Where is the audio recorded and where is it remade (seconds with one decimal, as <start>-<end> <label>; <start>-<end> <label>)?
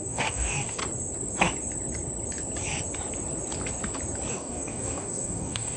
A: 0.0-0.8 remade; 0.8-4.3 recorded; 4.3-5.8 remade